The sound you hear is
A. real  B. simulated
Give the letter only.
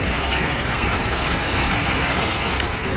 B